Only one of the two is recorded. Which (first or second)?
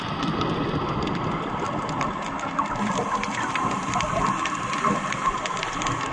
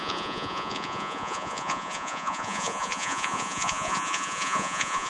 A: first